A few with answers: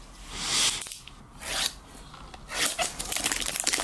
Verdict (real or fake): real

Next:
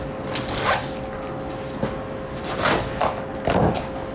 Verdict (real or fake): real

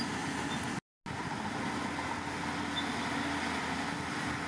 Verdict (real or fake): real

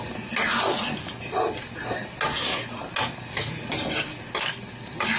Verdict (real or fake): real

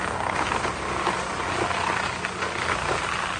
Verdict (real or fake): real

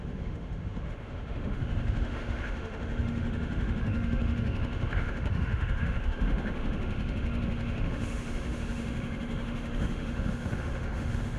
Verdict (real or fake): fake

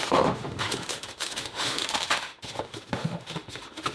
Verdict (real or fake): fake